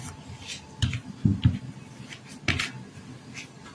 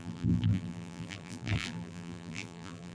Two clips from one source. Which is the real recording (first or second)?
first